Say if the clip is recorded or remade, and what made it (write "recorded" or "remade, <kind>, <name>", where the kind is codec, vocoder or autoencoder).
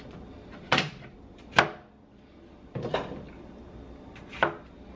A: recorded